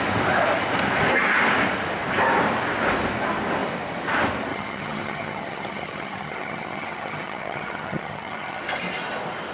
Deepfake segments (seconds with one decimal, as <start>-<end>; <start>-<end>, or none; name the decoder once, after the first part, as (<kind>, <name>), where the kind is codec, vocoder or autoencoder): 4.5-8.6 (vocoder, HiFi-GAN)